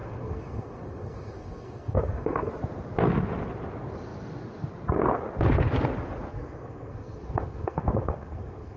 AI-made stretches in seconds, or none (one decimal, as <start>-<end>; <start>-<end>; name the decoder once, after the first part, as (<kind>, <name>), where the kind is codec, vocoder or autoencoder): 0.0-2.5 (codec, SNAC); 6.3-8.8